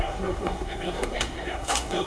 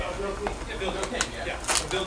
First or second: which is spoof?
first